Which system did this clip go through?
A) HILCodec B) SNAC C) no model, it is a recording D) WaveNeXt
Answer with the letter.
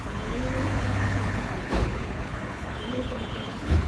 A